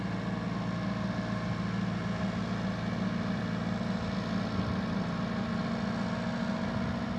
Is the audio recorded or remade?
recorded